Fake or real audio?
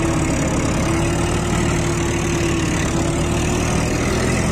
real